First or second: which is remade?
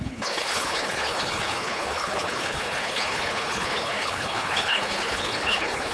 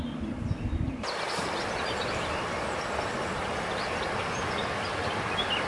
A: first